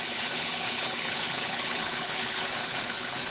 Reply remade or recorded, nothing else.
remade